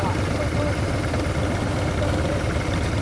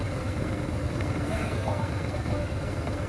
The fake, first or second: second